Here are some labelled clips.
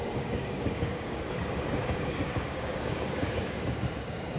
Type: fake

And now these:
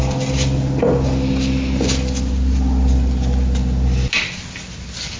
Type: real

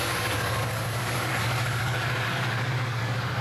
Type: fake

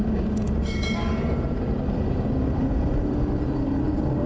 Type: fake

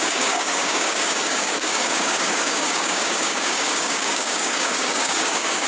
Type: fake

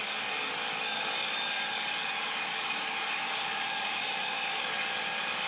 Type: fake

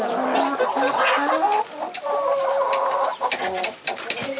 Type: real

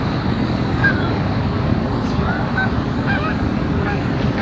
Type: fake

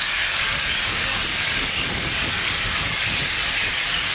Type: fake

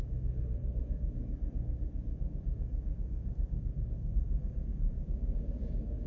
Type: fake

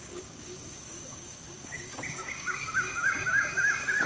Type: fake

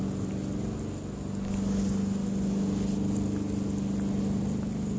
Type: real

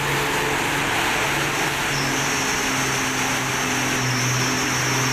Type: real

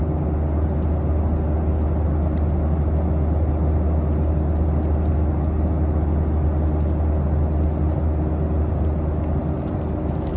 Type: real